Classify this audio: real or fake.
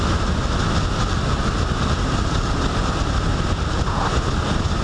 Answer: real